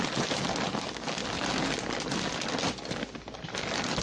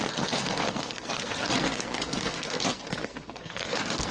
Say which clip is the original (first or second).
first